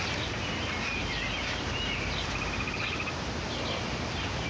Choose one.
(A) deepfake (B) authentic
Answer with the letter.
B